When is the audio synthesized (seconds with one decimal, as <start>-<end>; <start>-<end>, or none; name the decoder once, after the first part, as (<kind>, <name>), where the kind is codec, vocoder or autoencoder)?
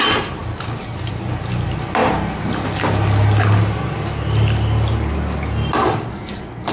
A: none